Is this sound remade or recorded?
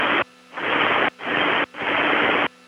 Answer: recorded